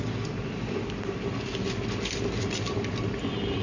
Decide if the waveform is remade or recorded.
recorded